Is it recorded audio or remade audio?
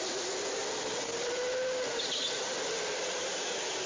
recorded